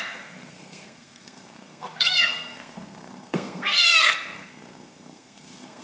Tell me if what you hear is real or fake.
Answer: fake